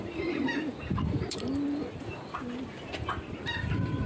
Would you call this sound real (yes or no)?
no